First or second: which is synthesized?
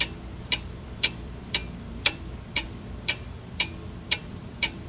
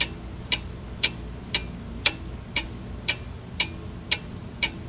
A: first